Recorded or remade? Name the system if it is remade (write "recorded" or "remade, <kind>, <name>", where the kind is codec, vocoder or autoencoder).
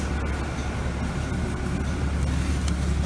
recorded